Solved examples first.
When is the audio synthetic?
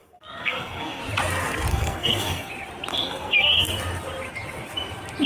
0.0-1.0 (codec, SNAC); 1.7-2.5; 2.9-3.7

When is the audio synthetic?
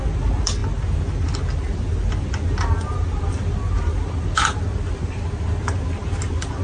none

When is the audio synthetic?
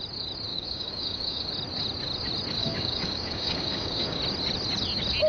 0.5-1.5 (codec, DAC); 2.6-4.2